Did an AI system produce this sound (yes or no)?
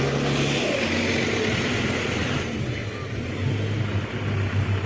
no